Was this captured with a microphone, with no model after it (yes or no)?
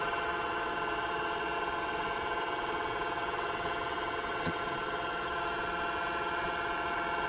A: no